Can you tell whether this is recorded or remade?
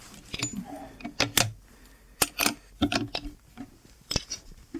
recorded